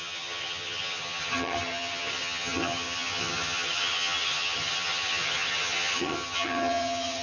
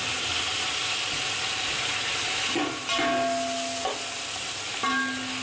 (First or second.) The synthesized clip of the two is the first